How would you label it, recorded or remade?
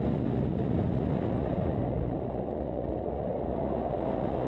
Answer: remade